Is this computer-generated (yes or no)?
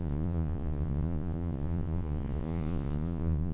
yes